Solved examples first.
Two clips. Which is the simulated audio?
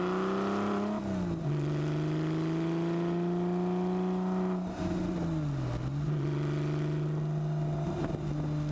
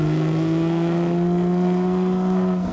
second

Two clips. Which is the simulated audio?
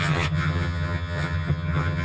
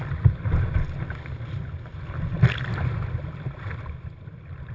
first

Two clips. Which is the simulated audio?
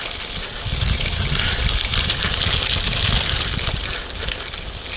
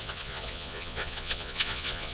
second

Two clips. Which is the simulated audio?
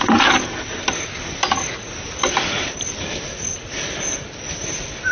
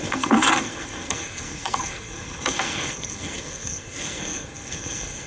second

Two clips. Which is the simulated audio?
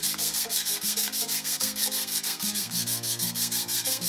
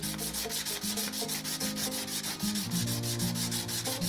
first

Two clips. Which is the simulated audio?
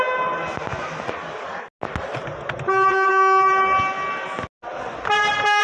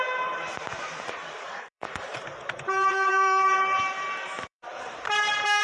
second